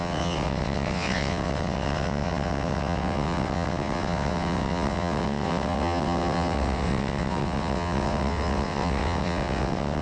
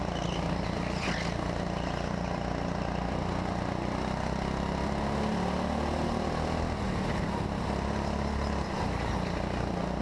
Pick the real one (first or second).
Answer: second